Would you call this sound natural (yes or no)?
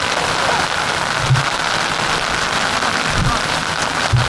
yes